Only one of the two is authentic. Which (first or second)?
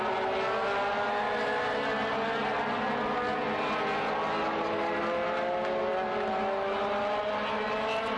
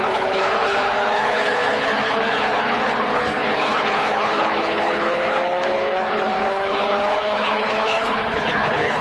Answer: first